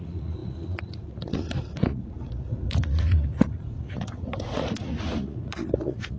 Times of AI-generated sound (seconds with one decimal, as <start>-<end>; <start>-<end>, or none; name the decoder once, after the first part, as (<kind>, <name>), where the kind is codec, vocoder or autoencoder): 0.0-6.2 (vocoder, Vocos)